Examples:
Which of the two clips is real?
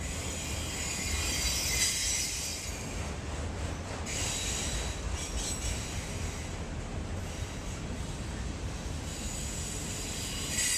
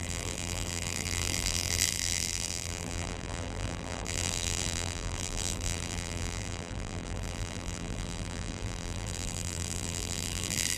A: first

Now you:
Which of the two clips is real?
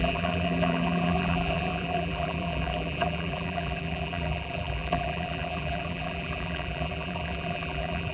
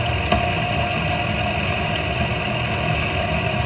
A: second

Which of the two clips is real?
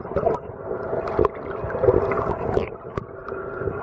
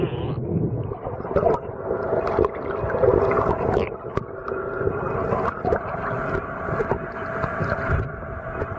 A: second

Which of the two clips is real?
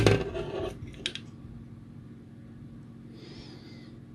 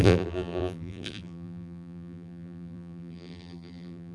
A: first